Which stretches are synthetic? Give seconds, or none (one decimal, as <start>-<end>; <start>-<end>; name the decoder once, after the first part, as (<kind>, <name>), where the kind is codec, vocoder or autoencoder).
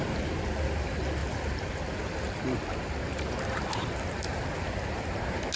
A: 1.2-1.9 (vocoder, BigVGAN v2)